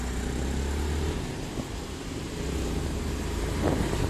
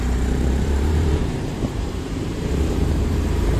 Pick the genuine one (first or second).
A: first